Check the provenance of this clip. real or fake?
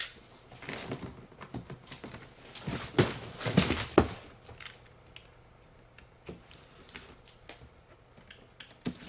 real